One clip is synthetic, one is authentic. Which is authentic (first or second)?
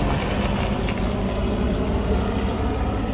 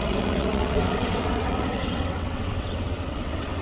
first